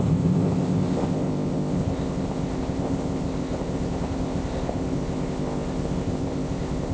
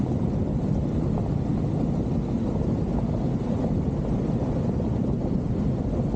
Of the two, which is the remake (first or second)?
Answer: first